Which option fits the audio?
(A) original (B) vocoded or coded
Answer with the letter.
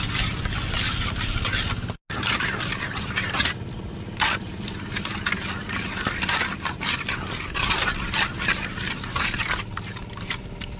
A